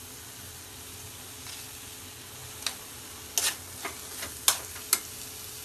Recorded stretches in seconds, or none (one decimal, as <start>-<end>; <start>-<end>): 0.0-5.6